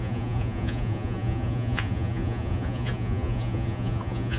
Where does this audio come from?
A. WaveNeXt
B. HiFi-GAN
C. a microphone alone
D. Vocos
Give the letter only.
D